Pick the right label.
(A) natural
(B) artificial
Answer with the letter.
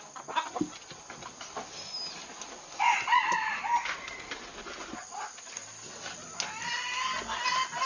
A